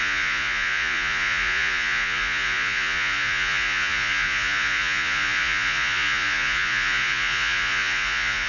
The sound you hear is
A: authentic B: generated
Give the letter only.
B